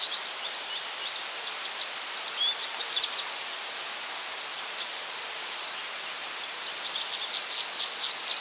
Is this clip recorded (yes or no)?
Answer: yes